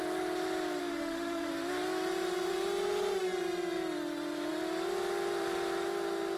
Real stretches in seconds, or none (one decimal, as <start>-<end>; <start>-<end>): 0.0-0.8; 1.5-6.4